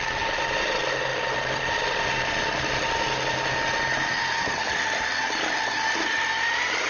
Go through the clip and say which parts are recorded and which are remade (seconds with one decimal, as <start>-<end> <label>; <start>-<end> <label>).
0.0-6.9 recorded